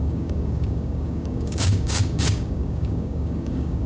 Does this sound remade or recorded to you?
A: remade